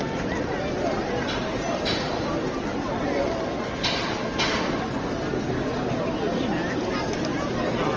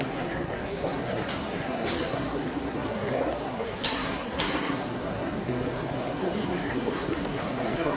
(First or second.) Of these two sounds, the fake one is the second